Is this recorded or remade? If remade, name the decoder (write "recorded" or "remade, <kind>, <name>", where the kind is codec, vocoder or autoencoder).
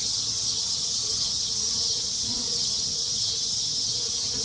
remade, vocoder, HiFi-GAN